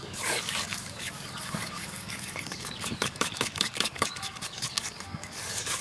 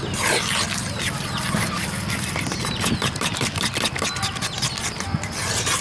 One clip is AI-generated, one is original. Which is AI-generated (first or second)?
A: first